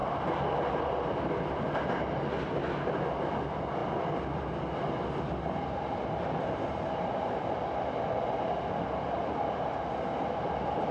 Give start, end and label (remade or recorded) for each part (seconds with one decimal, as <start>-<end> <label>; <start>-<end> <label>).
0.0-10.9 recorded